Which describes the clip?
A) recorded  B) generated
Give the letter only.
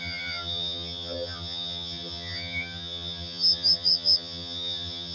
B